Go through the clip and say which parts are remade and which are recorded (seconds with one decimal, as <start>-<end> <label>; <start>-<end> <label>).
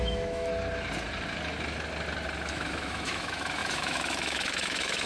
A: 0.0-0.5 remade; 0.5-2.5 recorded; 2.5-5.1 remade